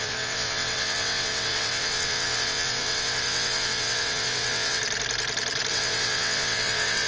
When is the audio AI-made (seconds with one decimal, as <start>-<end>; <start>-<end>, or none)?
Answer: 0.0-4.8; 5.7-7.1